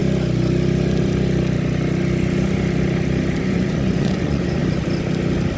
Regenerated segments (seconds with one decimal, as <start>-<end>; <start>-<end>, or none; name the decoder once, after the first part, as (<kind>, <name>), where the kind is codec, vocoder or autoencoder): 3.4-4.6 (vocoder, Vocos)